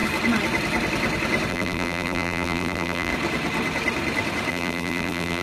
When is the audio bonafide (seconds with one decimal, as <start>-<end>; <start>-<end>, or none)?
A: 0.0-1.5; 3.1-4.5